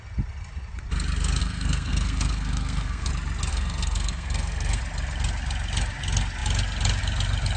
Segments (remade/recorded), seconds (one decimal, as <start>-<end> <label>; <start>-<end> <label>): 0.0-1.4 recorded; 1.4-3.1 remade; 3.1-3.5 recorded; 3.5-4.8 remade; 4.8-7.6 recorded